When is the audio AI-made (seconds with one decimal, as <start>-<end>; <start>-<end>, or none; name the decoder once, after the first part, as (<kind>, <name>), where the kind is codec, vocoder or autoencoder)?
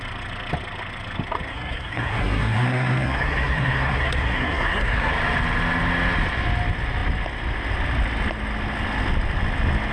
1.5-5.1 (codec, SNAC)